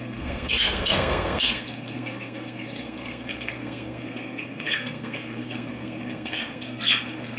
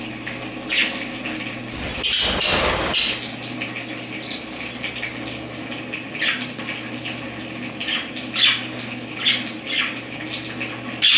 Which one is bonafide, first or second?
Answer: second